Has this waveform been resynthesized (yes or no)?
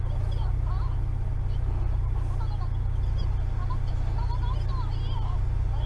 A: no